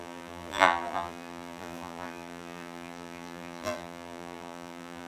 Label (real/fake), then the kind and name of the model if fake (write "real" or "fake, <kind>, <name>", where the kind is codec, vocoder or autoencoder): fake, vocoder, BigVGAN v2